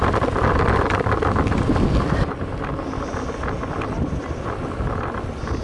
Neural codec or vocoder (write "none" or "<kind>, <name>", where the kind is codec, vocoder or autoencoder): none